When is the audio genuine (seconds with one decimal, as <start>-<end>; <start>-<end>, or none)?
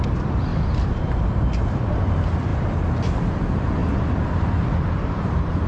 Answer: 0.0-0.5; 2.1-5.7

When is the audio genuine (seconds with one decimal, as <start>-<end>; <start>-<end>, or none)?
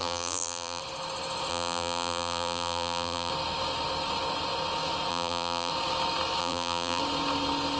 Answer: 0.8-1.5; 3.3-5.1; 5.7-6.4; 7.0-7.8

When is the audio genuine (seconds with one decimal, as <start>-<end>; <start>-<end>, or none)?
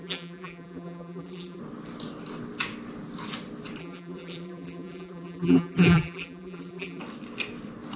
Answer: 1.6-3.8; 7.0-8.0